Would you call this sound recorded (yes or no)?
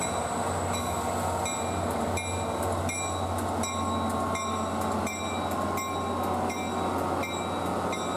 yes